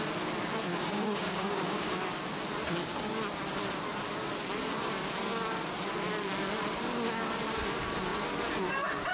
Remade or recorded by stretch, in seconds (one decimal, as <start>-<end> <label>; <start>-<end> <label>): 0.0-0.7 recorded; 0.7-2.0 remade; 2.0-9.1 recorded